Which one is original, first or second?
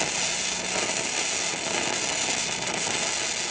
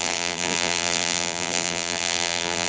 first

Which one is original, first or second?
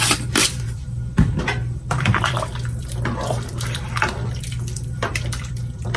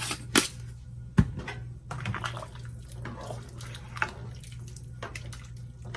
second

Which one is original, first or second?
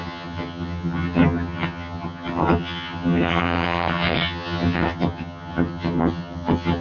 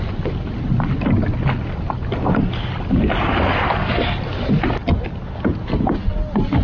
second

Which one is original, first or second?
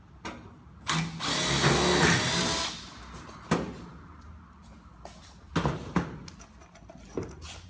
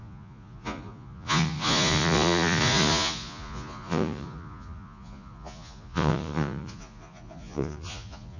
first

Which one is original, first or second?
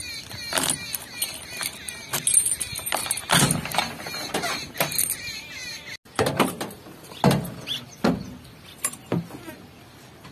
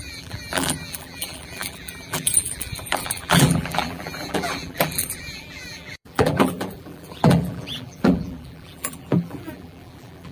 first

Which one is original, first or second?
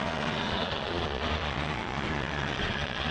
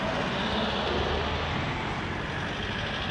second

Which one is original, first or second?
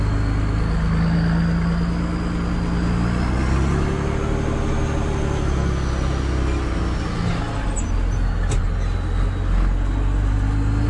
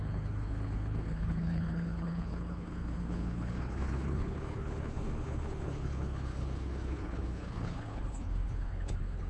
first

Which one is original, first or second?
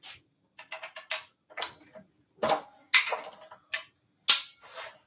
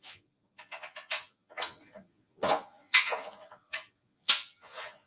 first